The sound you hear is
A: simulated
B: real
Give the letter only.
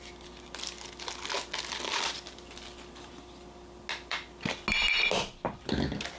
B